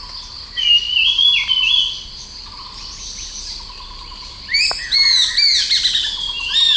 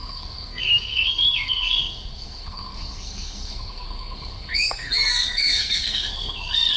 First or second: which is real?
first